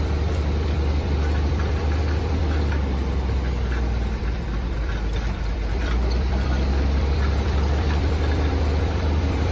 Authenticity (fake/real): fake